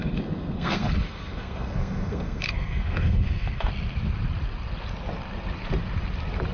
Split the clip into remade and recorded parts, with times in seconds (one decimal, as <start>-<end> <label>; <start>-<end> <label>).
0.0-3.7 remade; 3.7-6.5 recorded